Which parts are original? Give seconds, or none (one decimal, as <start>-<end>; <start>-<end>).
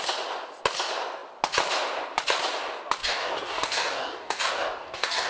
0.0-3.0